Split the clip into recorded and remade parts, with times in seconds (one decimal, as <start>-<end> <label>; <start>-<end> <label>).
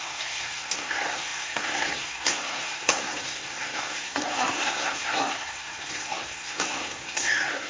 0.0-7.7 remade